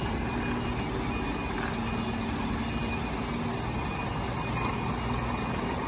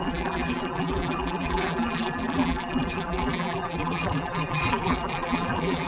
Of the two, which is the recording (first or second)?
first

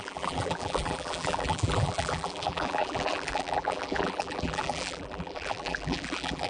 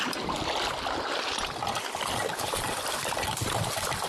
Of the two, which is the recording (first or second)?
second